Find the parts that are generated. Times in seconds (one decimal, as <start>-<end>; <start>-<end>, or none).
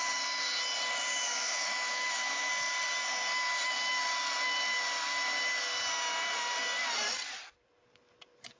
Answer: 1.1-2.5